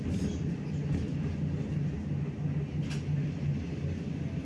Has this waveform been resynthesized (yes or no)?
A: no